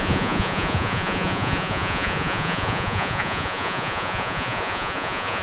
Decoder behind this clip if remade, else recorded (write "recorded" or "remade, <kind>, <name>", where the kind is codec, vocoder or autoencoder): remade, vocoder, Vocos